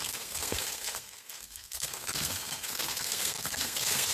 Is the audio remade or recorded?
remade